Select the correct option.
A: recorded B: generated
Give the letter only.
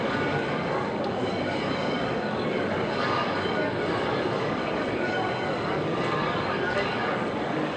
B